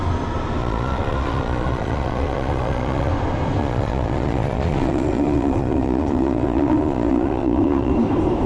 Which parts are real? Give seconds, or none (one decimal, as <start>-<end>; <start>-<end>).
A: 0.0-0.6; 3.1-3.6; 7.9-8.5